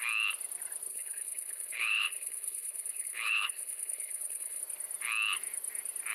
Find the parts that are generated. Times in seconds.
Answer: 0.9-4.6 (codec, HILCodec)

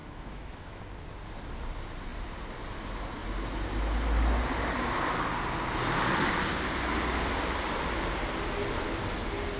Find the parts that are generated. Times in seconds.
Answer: 0.0-0.8 (autoencoder, DAC-VAE)

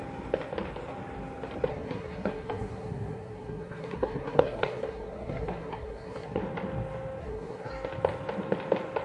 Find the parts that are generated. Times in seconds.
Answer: 1.7-6.4 (codec, SNAC); 7.2-7.7